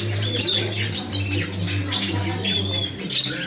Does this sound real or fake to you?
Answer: real